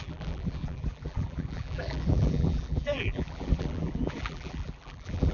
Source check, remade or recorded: remade